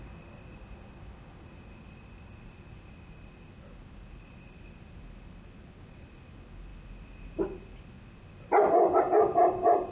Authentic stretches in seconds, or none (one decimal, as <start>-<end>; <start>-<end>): 0.0-9.9